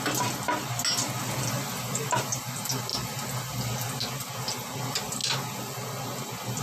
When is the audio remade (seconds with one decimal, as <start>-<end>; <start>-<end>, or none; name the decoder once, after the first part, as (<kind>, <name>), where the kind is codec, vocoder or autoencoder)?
none